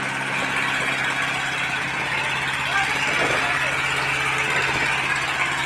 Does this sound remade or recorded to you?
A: recorded